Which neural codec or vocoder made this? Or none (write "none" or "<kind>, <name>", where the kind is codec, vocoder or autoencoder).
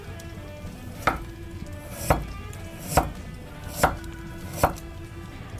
none